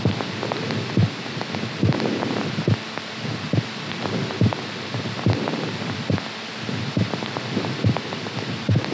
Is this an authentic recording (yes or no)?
yes